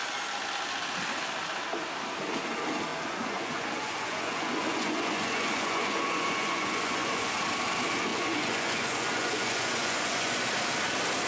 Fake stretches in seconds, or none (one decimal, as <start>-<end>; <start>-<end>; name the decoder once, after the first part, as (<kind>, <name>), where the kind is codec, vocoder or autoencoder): 2.9-7.3 (vocoder, Vocos); 8.1-10.4